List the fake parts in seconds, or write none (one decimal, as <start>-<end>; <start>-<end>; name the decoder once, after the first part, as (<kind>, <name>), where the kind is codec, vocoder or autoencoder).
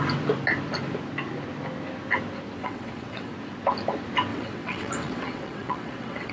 2.6-3.3 (vocoder, WaveNeXt); 4.3-6.3